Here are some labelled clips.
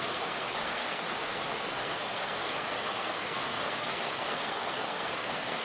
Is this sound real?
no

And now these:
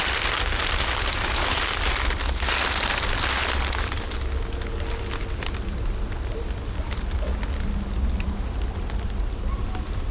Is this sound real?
yes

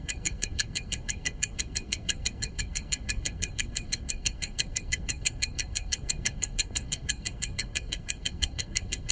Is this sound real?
no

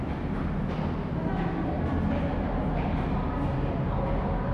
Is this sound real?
yes